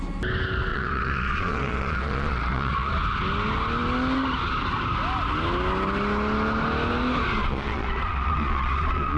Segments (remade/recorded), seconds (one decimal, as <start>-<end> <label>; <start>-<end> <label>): 0.0-0.7 recorded; 0.7-2.9 remade; 2.9-7.4 recorded; 7.4-9.2 remade